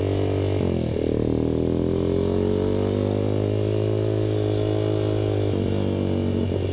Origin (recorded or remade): recorded